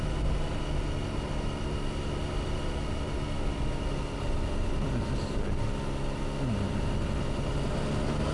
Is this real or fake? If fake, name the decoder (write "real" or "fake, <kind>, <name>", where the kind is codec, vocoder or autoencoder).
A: real